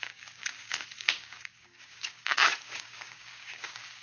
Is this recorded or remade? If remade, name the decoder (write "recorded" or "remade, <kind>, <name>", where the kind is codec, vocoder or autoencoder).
remade, codec, DAC